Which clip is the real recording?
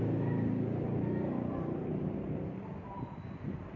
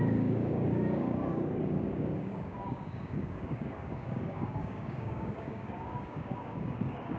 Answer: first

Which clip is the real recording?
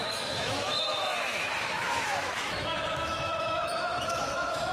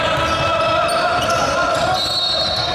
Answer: second